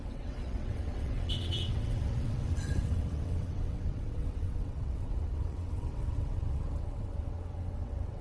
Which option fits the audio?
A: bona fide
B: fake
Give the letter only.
B